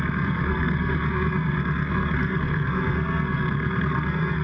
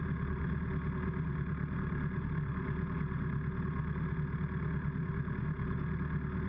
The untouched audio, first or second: second